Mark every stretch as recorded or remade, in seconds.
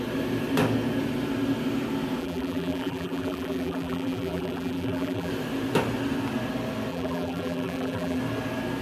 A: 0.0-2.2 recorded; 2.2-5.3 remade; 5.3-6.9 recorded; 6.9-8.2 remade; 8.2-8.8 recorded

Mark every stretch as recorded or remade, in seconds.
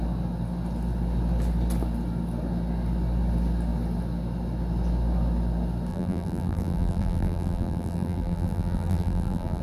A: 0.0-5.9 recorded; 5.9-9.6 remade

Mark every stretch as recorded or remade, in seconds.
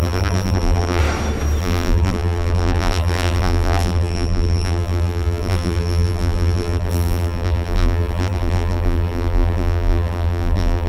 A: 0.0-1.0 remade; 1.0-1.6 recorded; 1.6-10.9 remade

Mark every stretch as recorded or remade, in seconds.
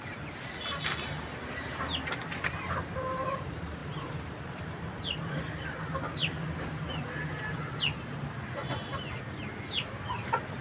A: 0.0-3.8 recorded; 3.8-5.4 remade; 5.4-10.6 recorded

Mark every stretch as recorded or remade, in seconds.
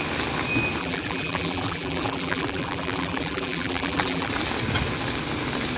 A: 0.0-0.8 recorded; 0.8-4.3 remade; 4.3-5.8 recorded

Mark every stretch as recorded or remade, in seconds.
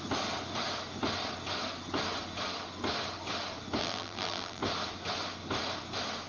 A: 0.0-3.8 recorded; 3.8-4.6 remade; 4.6-6.3 recorded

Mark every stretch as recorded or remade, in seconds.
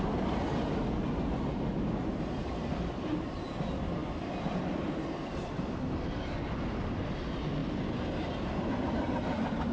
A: 0.0-2.6 recorded; 2.6-3.3 remade; 3.3-4.0 recorded; 4.0-5.8 remade; 5.8-9.7 recorded